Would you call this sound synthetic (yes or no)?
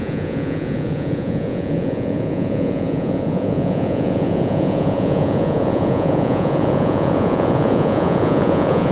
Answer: yes